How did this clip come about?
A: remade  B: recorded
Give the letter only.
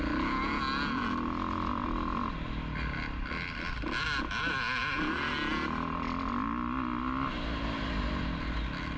B